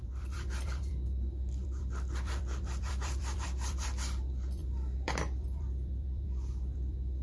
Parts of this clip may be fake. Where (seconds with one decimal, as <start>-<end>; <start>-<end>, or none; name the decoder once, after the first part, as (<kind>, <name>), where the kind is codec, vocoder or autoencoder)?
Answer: 0.0-7.2 (vocoder, BigVGAN v2)